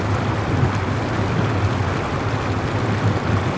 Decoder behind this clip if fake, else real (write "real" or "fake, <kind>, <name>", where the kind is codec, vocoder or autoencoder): real